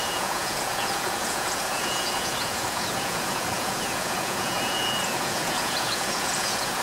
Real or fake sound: fake